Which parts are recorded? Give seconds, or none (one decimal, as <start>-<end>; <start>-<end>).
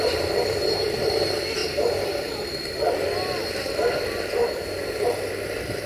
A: 0.0-1.6; 2.3-4.4; 5.3-5.9